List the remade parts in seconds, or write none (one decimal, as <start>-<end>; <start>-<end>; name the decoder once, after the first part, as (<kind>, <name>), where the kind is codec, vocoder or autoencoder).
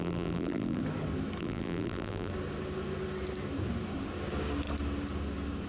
0.0-0.8 (vocoder, BigVGAN v2); 1.4-2.3